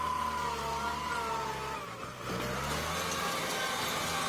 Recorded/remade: recorded